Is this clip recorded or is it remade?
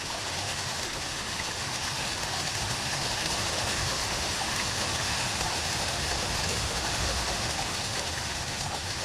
remade